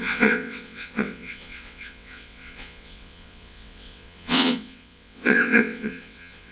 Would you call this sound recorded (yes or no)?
no